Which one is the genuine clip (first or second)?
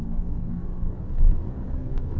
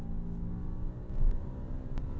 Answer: second